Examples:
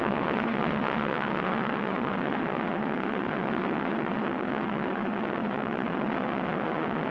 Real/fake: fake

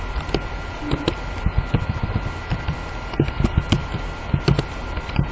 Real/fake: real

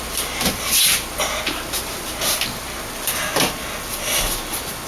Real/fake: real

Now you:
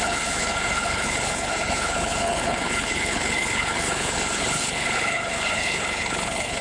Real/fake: fake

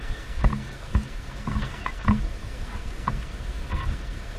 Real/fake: fake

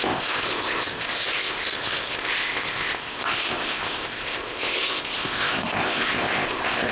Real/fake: fake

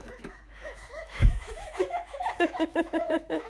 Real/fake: fake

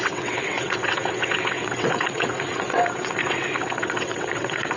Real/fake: fake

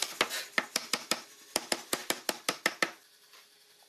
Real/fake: real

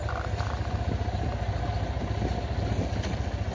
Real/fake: real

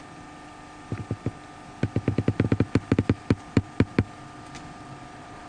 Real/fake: real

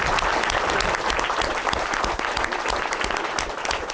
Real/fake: real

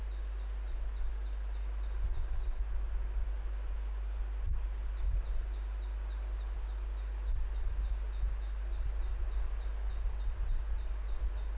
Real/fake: real